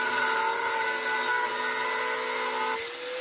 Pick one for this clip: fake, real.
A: real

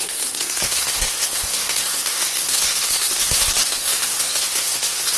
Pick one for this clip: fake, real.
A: fake